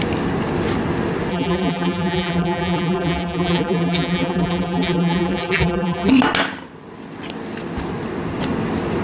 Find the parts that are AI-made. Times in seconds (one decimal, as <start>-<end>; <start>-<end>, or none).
1.3-6.1